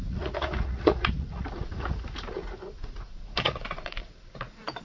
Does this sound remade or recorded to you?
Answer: remade